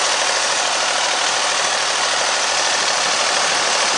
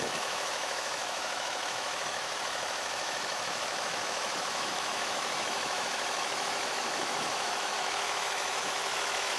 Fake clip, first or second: second